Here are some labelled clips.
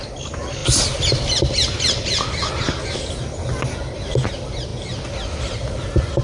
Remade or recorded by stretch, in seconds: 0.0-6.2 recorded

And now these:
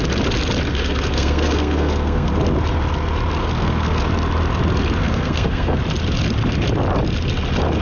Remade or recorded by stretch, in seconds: 0.0-0.7 recorded; 0.7-2.3 remade; 2.3-3.4 recorded; 3.4-4.0 remade; 4.0-5.0 recorded; 5.0-5.8 remade; 5.8-7.8 recorded

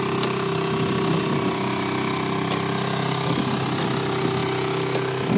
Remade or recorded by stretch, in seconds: 0.0-5.4 recorded